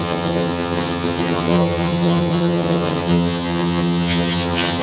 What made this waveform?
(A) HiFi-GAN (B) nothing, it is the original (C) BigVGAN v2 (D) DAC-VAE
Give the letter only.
A